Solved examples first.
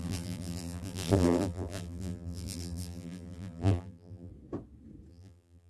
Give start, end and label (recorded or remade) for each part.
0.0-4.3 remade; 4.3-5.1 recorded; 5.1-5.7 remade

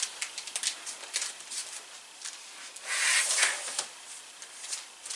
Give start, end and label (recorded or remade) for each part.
0.0-5.2 recorded

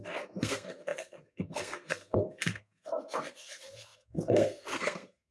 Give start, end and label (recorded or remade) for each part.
0.0-5.3 remade

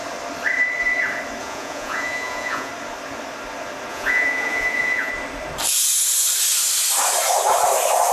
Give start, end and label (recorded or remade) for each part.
0.0-1.4 recorded; 1.4-2.7 remade; 2.7-3.9 recorded; 3.9-5.1 remade; 5.1-8.1 recorded

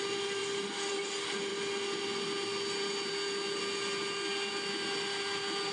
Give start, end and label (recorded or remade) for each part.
0.0-5.7 recorded

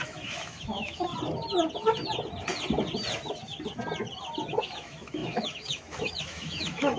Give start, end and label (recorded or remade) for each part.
0.0-1.1 remade; 1.1-4.6 recorded; 4.6-7.0 remade

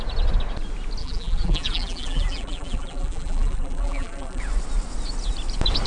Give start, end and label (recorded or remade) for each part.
0.0-1.0 recorded; 1.0-4.4 remade; 4.4-5.9 recorded